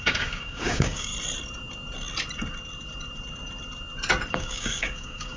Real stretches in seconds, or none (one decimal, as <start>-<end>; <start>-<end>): 1.1-4.3